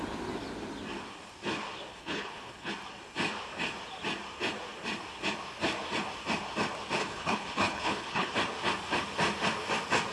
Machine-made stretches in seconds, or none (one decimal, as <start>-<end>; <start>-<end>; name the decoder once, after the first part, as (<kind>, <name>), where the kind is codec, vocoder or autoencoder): 1.9-2.7 (codec, HILCodec); 7.0-8.3